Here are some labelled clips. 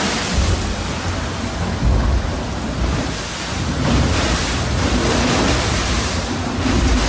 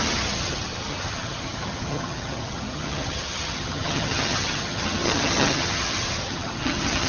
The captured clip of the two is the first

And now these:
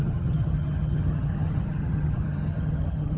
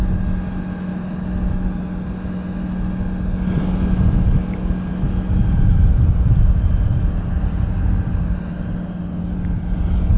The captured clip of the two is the second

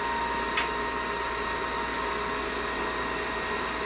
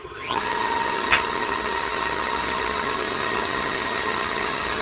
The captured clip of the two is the first